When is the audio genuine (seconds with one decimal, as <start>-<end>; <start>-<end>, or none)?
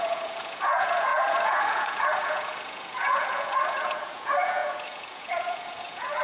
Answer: none